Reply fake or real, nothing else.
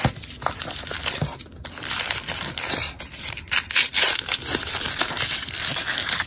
real